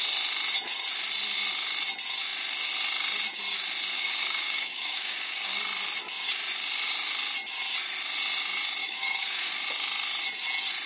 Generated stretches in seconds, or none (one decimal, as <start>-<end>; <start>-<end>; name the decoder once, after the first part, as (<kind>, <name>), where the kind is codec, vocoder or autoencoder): 3.9-5.6 (codec, DAC); 8.8-9.5